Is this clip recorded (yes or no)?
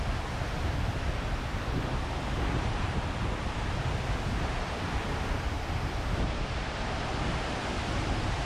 yes